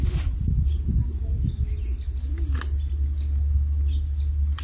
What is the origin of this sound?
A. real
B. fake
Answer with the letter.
A